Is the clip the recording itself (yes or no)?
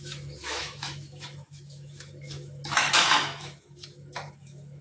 no